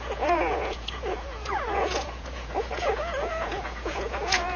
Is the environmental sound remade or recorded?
remade